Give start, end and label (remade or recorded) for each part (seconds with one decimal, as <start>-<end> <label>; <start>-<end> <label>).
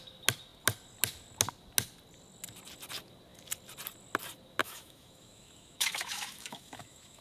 0.0-4.6 recorded; 4.6-7.2 remade